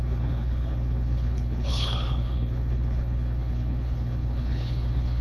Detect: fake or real fake